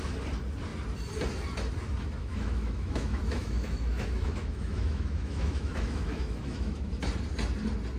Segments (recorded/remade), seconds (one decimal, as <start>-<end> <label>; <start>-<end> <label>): 0.0-2.2 recorded; 2.2-7.0 remade; 7.0-8.0 recorded